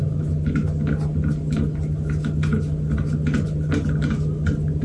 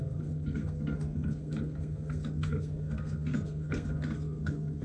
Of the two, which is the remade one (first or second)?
second